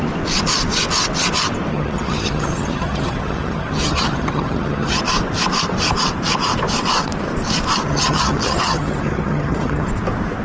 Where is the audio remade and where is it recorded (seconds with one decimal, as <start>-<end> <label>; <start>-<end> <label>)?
0.0-1.7 recorded; 1.7-5.0 remade; 5.0-7.9 recorded; 7.9-9.9 remade; 9.9-10.4 recorded